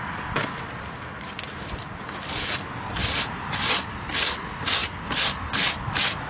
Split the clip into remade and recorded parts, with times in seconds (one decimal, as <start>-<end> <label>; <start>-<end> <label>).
0.0-6.3 recorded